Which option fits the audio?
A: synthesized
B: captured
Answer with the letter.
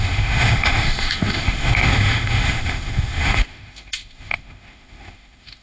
A